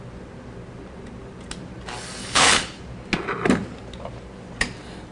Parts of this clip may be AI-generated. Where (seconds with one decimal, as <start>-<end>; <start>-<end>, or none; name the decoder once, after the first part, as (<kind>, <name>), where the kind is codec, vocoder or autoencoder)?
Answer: 2.2-2.8 (codec, HILCodec)